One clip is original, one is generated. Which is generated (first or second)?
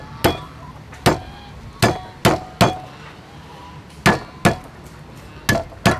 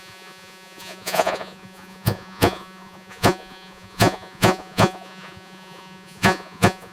second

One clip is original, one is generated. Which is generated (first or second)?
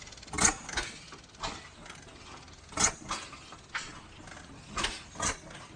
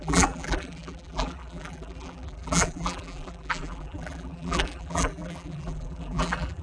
second